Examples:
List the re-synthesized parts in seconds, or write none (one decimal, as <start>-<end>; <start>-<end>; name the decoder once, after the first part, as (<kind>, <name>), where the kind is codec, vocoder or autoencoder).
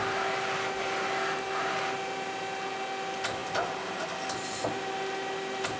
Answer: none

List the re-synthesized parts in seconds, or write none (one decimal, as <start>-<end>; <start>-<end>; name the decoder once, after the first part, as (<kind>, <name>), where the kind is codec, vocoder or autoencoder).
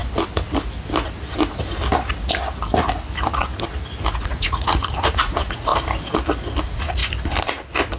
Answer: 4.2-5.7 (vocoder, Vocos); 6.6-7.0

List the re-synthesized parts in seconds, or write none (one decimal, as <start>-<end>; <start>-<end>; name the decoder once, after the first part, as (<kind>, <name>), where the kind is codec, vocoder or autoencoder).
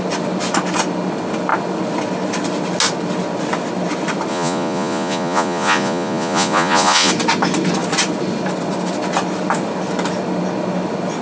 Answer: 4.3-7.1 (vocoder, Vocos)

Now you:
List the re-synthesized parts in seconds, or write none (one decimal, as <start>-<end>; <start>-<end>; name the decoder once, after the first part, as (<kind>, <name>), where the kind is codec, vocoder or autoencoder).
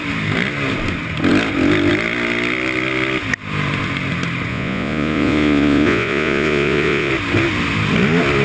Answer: 4.5-7.1 (vocoder, Vocos)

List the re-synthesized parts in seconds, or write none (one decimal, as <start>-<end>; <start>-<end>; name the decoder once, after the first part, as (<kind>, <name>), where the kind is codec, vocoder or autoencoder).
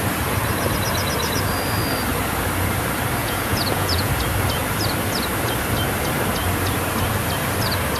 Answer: 3.2-4.1 (vocoder, Vocos)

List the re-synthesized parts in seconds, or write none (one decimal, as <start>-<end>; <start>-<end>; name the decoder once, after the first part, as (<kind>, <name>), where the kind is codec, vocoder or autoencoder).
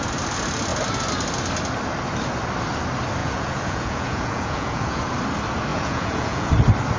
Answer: 3.2-5.0 (vocoder, Vocos); 5.7-6.5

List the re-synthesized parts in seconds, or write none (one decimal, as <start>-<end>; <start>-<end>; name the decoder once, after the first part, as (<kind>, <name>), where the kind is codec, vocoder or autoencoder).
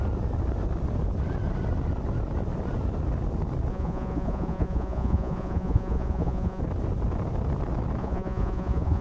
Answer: 3.7-6.6 (vocoder, Vocos); 8.0-9.0